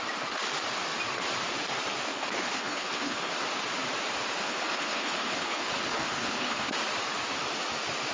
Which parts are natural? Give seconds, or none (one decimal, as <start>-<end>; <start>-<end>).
0.0-2.1; 3.3-4.4; 6.7-8.1